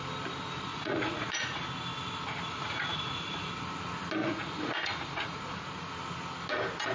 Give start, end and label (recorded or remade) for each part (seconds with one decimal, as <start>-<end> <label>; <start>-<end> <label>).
0.0-0.7 recorded; 0.7-1.6 remade; 1.6-2.5 recorded; 2.5-3.5 remade; 3.5-4.2 recorded; 4.2-5.9 remade; 5.9-6.9 recorded